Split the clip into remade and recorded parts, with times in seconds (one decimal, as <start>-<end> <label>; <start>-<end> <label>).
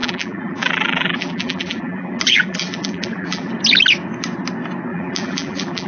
0.0-3.5 remade; 3.5-4.9 recorded; 4.9-5.9 remade